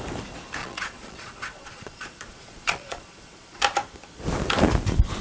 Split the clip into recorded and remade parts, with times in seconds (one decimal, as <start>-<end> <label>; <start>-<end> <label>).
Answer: 0.0-0.6 recorded; 0.6-3.6 remade; 3.6-5.2 recorded